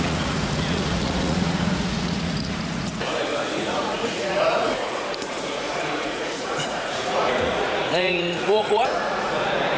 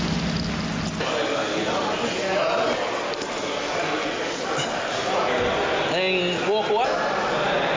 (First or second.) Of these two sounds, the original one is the second